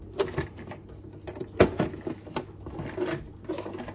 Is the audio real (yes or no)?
yes